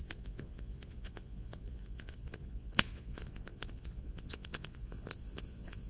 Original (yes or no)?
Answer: no